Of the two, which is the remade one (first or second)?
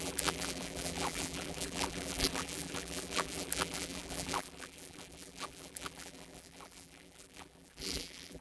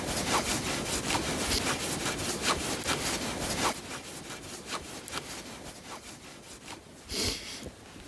first